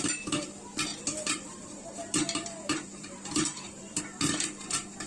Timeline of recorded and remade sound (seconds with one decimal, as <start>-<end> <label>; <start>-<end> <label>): 0.0-0.9 recorded; 0.9-4.0 remade; 4.0-5.1 recorded